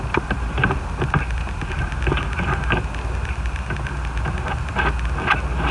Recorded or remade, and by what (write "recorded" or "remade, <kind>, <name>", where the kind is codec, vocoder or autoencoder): recorded